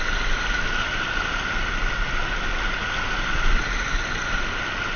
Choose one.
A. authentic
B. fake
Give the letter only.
A